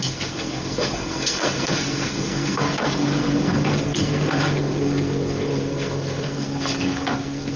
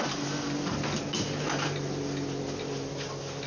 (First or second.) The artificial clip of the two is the first